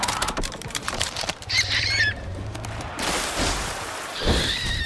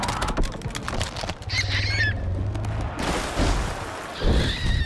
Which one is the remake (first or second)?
first